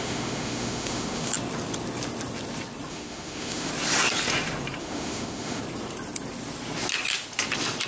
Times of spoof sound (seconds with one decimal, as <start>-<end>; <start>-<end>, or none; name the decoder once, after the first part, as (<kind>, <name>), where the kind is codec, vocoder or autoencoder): 0.0-1.3 (autoencoder, DAC-VAE); 2.9-3.7; 4.8-5.6